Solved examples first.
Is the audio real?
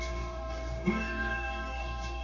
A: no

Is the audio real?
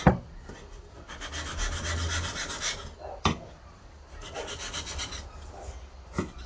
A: yes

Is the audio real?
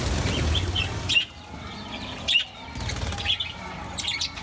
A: yes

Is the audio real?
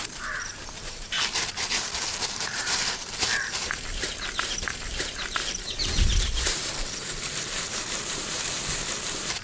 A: no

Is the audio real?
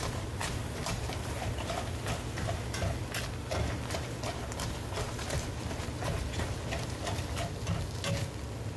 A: yes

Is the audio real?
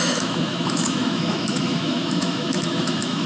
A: no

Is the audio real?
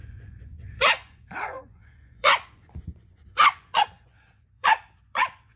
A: no